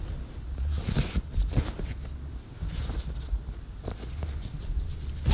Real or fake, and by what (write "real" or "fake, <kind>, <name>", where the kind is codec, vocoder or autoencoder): real